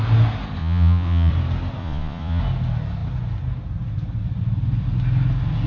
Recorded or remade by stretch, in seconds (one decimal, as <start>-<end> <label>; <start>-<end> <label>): 0.0-0.6 recorded; 0.6-1.3 remade; 1.3-1.8 recorded; 1.8-2.4 remade; 2.4-5.7 recorded

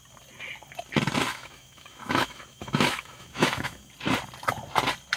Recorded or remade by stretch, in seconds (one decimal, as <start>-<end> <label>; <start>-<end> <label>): 0.0-1.3 recorded; 1.3-3.9 remade; 3.9-5.2 recorded

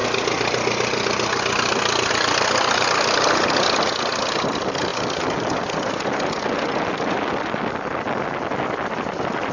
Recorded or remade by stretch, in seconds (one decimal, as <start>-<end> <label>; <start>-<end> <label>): 0.0-9.5 recorded